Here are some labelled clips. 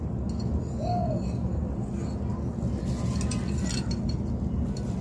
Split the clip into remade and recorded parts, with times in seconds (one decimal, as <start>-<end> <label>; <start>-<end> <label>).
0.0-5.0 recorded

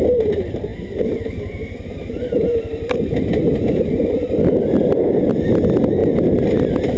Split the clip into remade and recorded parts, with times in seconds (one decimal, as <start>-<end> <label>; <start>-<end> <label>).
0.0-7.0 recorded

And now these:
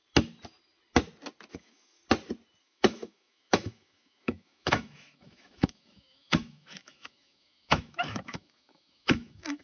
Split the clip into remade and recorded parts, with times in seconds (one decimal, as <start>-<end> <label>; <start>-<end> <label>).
0.0-1.5 recorded; 1.5-2.0 remade; 2.0-2.6 recorded; 2.6-9.6 remade

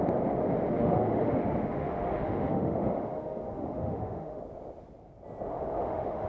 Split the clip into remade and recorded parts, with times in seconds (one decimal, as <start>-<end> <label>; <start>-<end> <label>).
0.0-0.7 recorded; 0.7-4.4 remade; 4.4-5.5 recorded; 5.5-6.3 remade